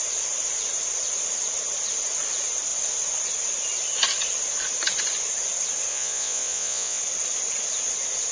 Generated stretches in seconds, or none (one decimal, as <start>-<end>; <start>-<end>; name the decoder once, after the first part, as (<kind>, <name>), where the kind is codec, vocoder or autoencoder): 5.9-7.0 (vocoder, Vocos)